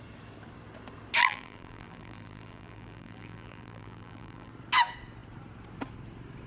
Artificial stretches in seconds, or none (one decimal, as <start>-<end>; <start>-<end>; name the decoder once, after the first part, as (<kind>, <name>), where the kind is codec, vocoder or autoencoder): 1.2-4.5 (vocoder, BigVGAN v2)